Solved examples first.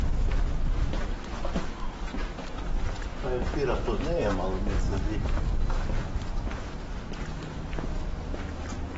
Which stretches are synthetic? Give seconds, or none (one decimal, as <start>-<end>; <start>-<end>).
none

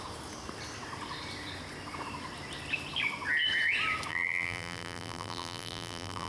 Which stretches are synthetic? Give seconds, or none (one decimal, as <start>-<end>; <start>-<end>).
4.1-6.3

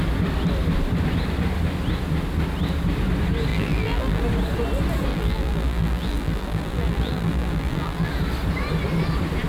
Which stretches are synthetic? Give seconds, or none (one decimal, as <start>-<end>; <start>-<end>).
3.5-4.2; 5.1-8.1